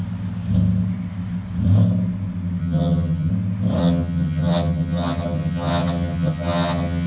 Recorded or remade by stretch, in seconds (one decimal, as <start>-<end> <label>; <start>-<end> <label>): 0.0-2.6 recorded; 2.6-3.3 remade; 3.3-3.8 recorded; 3.8-7.1 remade